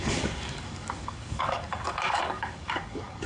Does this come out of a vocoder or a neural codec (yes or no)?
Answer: yes